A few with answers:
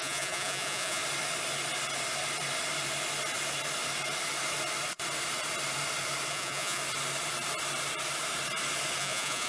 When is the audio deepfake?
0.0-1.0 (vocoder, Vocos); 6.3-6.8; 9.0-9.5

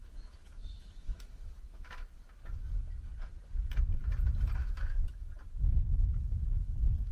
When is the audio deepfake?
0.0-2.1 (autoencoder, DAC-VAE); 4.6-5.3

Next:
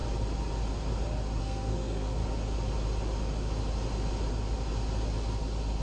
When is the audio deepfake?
1.4-2.2 (codec, SNAC)

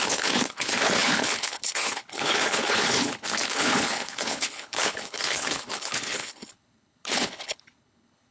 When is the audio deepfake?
0.0-8.3 (codec, HILCodec)

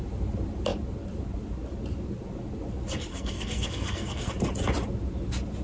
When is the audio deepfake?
3.1-4.3 (codec, SNAC)

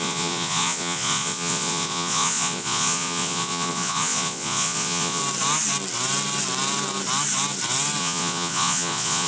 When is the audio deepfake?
0.0-5.2 (vocoder, Vocos); 8.0-9.3